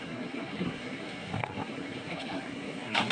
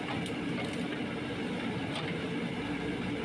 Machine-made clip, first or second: first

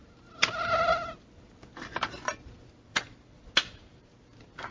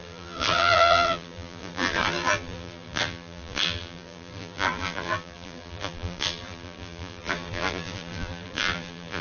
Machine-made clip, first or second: second